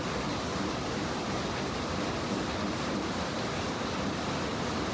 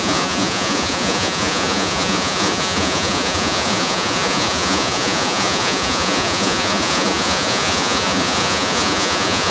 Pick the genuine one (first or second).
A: first